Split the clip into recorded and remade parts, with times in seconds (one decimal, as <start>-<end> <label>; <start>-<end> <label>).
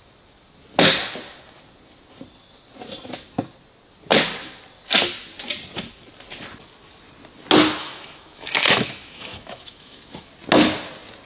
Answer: 0.0-7.8 recorded; 7.8-10.3 remade; 10.3-11.3 recorded